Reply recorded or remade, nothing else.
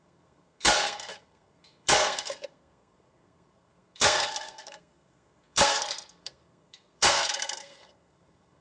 remade